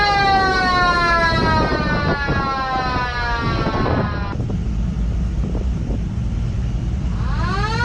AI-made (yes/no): no